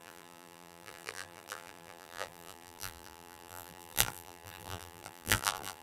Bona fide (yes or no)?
no